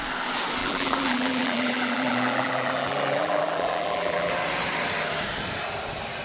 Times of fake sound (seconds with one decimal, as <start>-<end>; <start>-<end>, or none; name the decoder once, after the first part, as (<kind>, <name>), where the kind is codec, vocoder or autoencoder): 0.6-4.3 (vocoder, BigVGAN v2)